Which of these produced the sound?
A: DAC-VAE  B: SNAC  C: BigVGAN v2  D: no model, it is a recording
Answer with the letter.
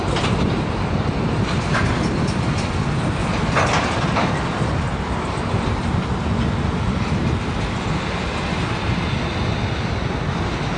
D